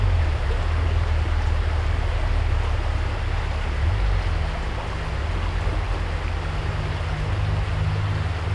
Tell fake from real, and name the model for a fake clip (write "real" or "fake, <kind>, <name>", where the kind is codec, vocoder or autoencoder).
real